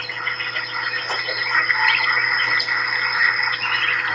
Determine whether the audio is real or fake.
real